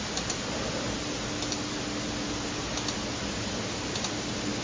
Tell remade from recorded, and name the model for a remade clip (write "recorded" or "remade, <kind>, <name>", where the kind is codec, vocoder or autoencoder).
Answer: recorded